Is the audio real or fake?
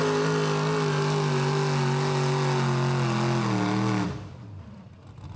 real